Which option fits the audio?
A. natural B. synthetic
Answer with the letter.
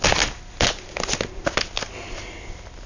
A